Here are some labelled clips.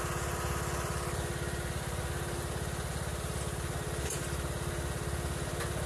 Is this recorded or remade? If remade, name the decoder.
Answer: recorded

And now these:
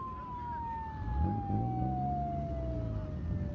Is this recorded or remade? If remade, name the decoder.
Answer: recorded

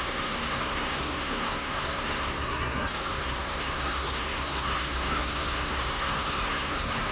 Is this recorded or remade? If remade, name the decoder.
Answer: remade, codec, SNAC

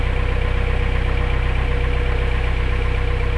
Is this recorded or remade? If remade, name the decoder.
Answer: recorded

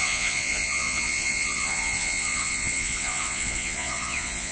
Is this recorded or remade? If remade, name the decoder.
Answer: remade, vocoder, Vocos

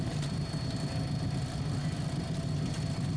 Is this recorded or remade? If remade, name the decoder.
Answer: recorded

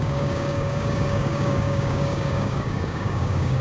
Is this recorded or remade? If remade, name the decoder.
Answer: remade, codec, DAC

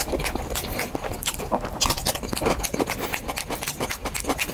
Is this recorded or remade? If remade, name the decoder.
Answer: recorded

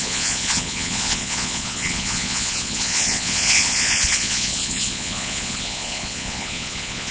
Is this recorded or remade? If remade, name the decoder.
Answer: remade, vocoder, Vocos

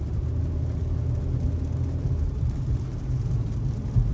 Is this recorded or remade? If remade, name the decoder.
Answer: recorded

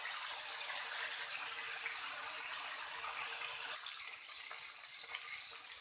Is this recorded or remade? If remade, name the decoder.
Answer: recorded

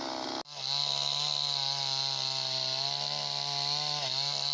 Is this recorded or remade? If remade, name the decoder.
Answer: recorded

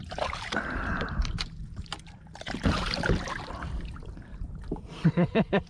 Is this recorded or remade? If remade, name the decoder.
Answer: remade, vocoder, BigVGAN v2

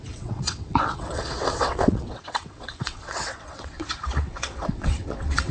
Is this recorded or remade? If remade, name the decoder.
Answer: remade, vocoder, WaveNeXt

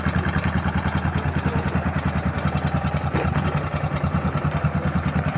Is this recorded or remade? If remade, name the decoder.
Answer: recorded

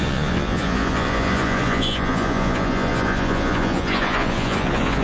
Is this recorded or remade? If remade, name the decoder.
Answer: remade, vocoder, Vocos